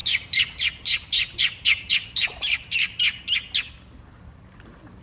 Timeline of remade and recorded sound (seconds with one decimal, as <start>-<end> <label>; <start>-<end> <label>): 0.0-3.0 remade; 3.0-5.0 recorded